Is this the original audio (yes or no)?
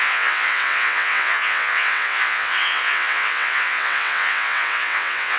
no